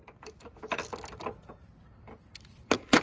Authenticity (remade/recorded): recorded